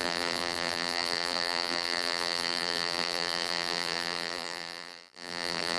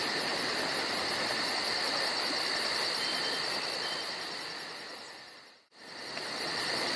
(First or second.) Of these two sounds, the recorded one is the second